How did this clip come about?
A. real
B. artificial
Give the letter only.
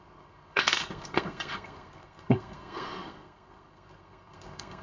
B